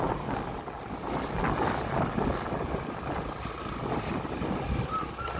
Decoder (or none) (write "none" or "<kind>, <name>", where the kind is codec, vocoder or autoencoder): none